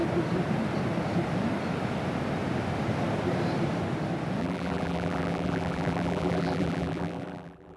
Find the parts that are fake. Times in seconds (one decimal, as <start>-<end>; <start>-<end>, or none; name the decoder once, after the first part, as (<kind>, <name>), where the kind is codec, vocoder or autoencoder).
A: 4.4-7.8 (vocoder, BigVGAN v2)